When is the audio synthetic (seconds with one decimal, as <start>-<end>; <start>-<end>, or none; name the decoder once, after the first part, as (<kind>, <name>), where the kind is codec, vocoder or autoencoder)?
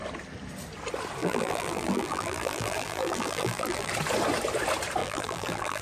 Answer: 1.2-3.9 (vocoder, BigVGAN v2); 5.0-5.8